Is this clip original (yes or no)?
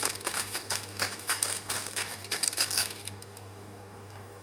no